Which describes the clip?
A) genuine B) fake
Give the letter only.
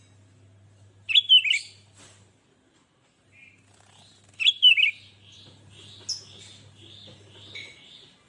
A